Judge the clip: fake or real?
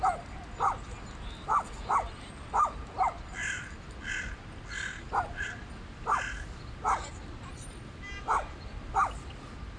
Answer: real